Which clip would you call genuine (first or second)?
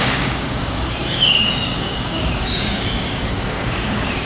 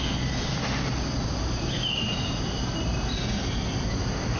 second